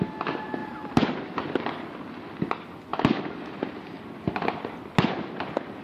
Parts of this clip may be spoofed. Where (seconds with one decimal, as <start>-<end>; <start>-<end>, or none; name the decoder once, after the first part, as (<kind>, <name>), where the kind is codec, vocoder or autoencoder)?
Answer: 0.6-1.7 (vocoder, BigVGAN v2)

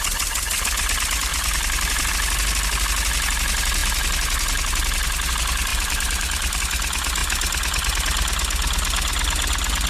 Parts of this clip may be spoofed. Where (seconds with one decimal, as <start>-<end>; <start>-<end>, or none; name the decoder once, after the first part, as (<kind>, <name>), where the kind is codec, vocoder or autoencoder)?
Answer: 1.3-2.1 (vocoder, BigVGAN v2); 5.7-6.6

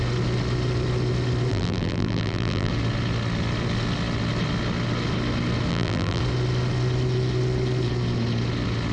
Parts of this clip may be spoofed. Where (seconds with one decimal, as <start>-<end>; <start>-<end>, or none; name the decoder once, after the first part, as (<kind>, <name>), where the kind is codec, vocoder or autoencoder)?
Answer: 1.5-2.7 (vocoder, BigVGAN v2); 5.7-6.2

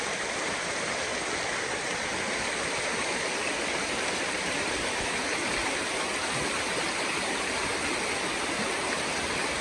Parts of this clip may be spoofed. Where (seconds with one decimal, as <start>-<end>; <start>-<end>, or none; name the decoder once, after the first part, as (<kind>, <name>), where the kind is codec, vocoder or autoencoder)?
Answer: 0.0-1.1 (vocoder, BigVGAN v2); 2.4-9.6